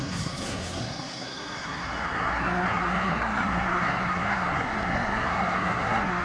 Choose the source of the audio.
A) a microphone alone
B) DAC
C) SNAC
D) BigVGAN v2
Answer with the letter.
C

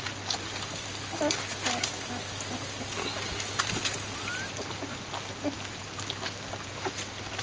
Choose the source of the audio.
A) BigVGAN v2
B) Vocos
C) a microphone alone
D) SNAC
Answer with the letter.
C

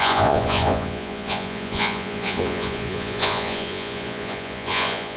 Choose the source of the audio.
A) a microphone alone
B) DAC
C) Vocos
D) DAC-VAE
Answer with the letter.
C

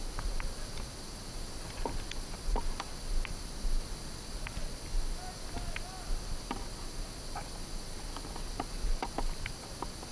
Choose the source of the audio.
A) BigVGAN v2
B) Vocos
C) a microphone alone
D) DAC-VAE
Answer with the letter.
C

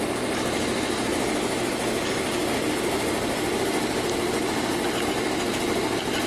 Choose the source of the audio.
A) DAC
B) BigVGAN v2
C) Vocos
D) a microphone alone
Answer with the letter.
D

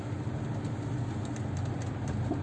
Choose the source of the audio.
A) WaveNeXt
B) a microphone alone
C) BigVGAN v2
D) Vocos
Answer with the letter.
B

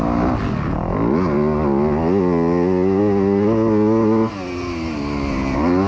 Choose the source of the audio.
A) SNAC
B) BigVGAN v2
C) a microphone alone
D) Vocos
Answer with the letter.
C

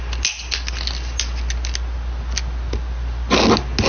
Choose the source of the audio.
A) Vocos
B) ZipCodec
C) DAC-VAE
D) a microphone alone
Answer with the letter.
D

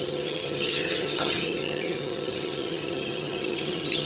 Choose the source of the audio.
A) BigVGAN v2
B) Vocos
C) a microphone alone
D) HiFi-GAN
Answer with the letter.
D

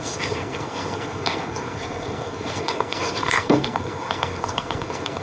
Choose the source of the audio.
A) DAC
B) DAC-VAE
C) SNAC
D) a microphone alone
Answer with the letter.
C